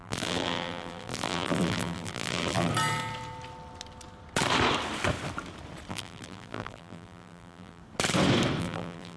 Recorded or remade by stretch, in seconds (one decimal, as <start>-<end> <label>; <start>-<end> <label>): 0.0-2.7 remade; 2.7-5.9 recorded; 5.9-7.8 remade; 7.8-8.6 recorded; 8.6-9.2 remade